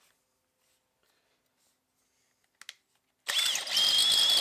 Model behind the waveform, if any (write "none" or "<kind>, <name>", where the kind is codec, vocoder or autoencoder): none